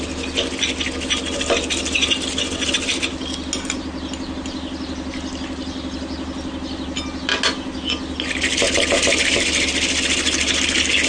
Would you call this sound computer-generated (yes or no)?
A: no